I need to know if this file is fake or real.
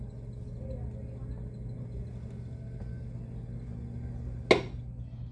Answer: real